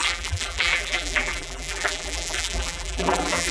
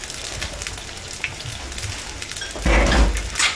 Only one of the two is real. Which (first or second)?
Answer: second